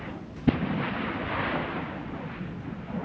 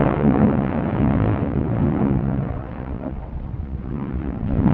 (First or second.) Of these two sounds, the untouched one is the first